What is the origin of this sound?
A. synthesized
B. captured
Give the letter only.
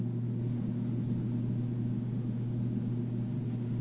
B